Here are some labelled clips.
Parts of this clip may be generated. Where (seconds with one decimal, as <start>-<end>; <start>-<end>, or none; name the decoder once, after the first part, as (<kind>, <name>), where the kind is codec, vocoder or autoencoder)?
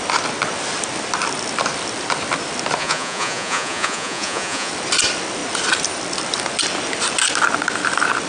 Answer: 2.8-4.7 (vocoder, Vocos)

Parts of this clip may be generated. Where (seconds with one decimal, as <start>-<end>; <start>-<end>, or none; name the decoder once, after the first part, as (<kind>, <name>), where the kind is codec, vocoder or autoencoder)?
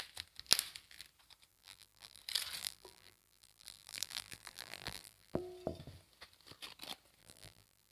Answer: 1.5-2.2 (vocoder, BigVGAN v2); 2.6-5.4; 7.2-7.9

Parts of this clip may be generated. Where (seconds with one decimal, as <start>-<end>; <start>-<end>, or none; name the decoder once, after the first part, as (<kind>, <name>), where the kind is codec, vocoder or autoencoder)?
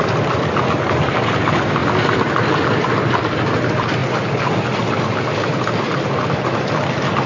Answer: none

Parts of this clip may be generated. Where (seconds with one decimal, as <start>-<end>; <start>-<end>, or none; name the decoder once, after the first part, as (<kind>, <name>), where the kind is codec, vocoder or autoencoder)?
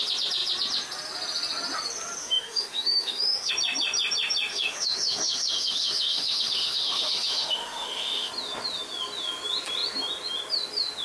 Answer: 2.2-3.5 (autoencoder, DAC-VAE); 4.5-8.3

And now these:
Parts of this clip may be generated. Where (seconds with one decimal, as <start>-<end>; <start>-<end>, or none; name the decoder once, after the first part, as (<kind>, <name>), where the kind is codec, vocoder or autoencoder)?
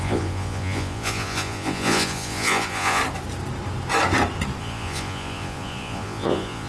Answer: 0.0-3.0 (vocoder, Vocos); 4.6-6.7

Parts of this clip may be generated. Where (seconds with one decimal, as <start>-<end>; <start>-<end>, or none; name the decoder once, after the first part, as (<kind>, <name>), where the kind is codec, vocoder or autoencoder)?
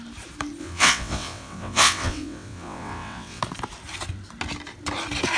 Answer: 0.6-3.4 (vocoder, WaveNeXt)